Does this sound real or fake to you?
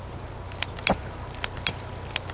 real